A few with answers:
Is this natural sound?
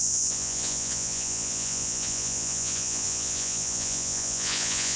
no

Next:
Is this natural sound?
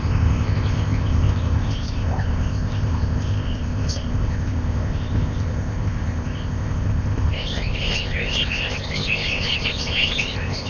no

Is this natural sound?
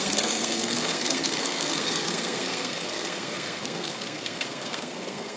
no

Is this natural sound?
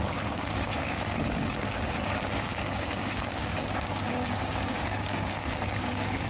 no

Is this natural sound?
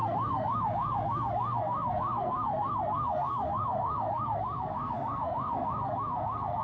no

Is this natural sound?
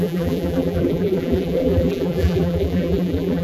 no